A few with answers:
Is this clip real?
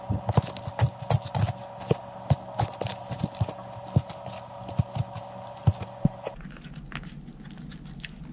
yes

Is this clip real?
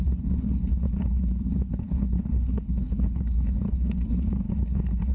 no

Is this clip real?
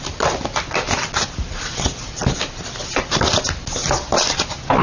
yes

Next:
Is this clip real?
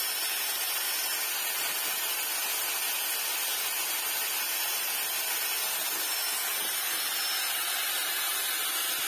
yes